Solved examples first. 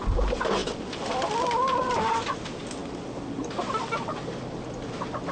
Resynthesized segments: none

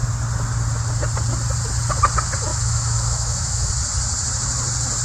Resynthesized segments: 2.5-3.7 (autoencoder, DAC-VAE)

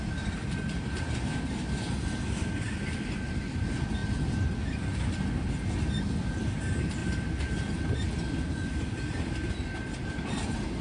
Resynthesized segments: 0.4-2.8 (vocoder, BigVGAN v2); 4.0-5.3; 7.0-9.5

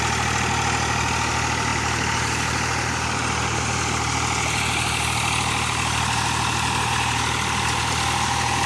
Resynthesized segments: none